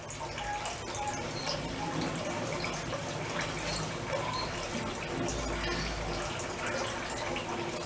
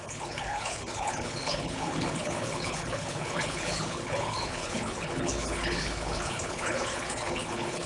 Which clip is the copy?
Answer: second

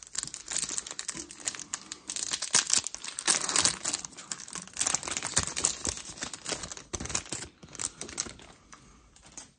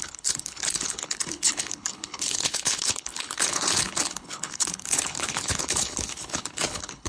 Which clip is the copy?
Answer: second